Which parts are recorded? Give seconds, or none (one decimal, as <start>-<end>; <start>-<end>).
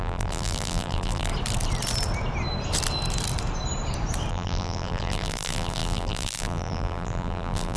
1.3-4.3